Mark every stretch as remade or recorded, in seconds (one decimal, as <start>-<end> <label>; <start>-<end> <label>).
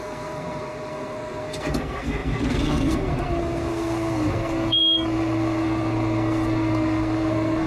0.0-7.7 remade